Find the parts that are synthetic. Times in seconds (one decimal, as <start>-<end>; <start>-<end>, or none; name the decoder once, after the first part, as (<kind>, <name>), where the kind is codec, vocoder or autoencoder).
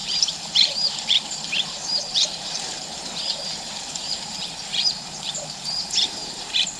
0.0-6.8 (vocoder, BigVGAN v2)